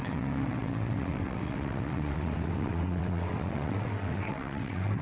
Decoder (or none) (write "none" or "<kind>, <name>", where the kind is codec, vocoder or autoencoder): vocoder, WaveNeXt